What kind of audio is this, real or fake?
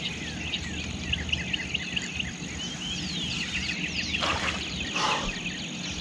real